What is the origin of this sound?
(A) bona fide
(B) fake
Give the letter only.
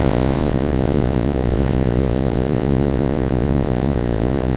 B